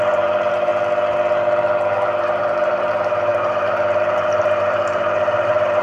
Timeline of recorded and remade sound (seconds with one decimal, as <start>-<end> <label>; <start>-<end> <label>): 0.0-0.7 remade; 0.7-2.2 recorded; 2.2-5.8 remade